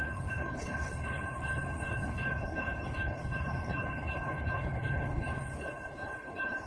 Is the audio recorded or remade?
remade